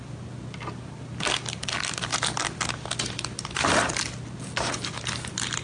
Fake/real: real